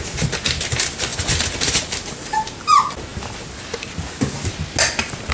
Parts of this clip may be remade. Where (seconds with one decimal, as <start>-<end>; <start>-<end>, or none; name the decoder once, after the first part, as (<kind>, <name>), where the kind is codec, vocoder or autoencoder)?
none